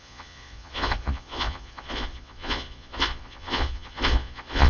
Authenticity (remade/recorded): remade